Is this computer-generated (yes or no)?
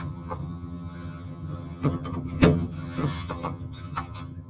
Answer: yes